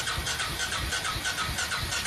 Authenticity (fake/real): fake